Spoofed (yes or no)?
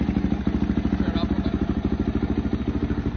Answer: no